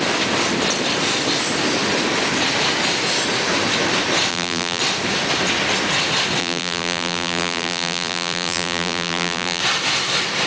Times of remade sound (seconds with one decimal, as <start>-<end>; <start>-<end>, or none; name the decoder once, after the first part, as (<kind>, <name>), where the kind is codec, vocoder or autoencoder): 4.3-4.8 (vocoder, BigVGAN v2); 6.4-9.6